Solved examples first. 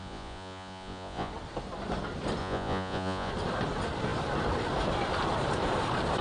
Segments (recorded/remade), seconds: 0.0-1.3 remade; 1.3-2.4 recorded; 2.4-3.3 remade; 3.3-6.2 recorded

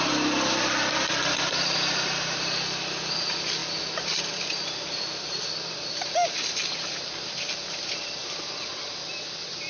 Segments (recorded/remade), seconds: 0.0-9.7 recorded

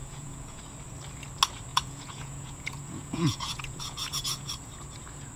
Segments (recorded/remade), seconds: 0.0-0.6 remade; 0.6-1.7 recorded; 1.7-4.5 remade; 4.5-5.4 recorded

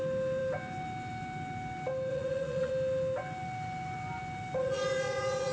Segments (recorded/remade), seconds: 0.0-2.1 recorded; 2.1-2.7 remade; 2.7-4.6 recorded; 4.6-5.5 remade

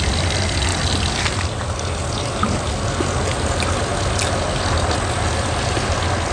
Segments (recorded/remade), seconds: 0.0-6.3 recorded